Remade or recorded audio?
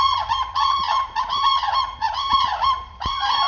remade